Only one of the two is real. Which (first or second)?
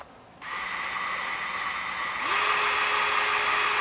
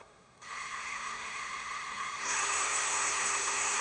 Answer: first